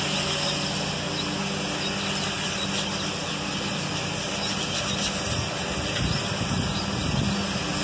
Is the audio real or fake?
real